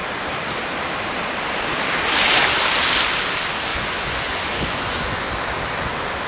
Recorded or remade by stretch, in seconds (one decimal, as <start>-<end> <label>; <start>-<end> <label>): 0.0-3.7 recorded; 3.7-5.3 remade; 5.3-6.3 recorded